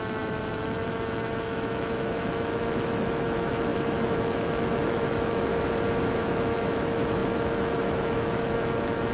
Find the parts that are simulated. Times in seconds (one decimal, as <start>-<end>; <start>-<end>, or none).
0.0-5.5; 6.3-9.1